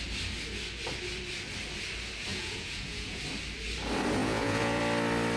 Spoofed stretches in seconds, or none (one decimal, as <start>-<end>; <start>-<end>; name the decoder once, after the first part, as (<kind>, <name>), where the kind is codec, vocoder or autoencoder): 2.3-3.2 (vocoder, Vocos); 4.2-4.8